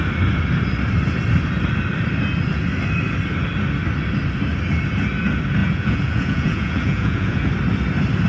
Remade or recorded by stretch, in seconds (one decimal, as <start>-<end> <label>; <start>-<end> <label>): 0.0-5.6 recorded; 5.6-7.5 remade; 7.5-8.3 recorded